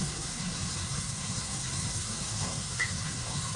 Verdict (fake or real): fake